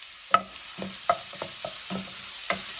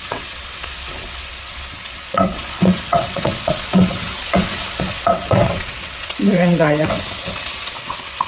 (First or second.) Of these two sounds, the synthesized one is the second